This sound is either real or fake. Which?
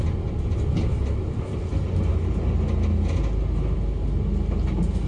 real